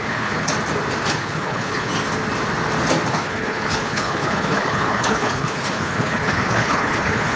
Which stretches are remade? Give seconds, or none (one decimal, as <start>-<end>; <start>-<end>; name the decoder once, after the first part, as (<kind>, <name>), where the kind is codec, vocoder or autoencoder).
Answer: 0.0-0.5 (codec, HILCodec); 1.1-1.9; 3.1-7.4